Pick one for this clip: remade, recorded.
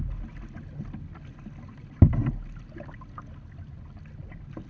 recorded